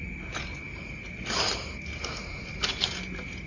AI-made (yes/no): no